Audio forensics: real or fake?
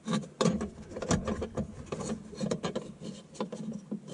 real